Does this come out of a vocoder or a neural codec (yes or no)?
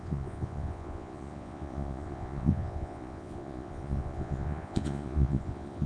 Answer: yes